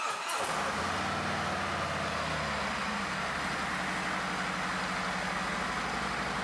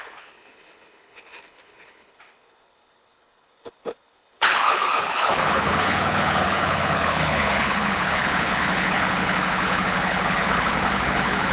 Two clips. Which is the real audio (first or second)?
first